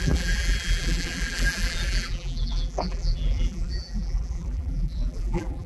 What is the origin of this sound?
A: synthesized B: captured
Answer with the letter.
A